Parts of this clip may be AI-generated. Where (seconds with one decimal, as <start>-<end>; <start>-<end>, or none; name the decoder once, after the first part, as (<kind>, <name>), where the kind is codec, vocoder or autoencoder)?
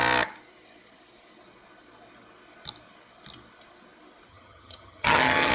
4.3-5.5 (vocoder, HiFi-GAN)